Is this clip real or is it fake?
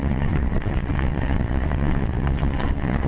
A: fake